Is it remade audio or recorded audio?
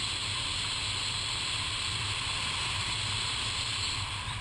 recorded